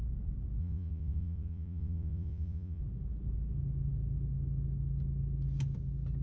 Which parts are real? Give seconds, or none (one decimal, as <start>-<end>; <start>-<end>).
0.0-0.6; 2.8-6.2